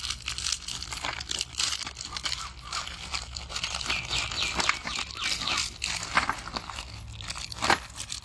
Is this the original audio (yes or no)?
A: yes